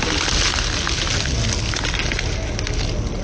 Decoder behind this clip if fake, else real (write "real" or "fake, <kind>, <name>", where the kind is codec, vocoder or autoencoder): real